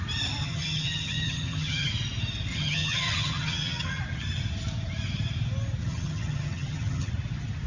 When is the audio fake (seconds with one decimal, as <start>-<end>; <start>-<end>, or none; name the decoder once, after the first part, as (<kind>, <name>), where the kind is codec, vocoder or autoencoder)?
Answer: 0.4-1.9 (vocoder, HiFi-GAN); 2.5-4.0; 5.8-7.1